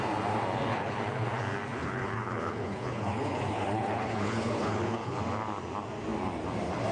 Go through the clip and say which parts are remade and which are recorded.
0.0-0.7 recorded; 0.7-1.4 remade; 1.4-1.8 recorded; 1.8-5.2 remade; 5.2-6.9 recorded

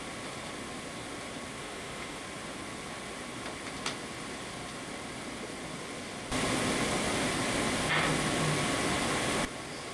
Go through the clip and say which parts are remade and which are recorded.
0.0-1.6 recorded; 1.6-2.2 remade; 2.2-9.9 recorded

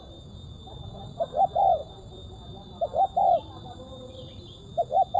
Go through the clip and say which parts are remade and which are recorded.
0.0-5.2 recorded

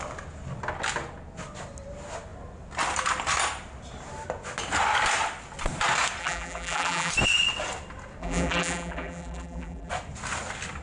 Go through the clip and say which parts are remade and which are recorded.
0.0-6.2 recorded; 6.2-7.1 remade; 7.1-8.2 recorded; 8.2-9.9 remade; 9.9-10.8 recorded